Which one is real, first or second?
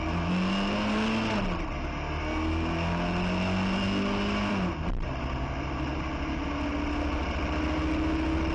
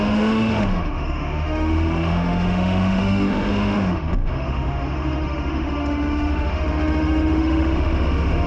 first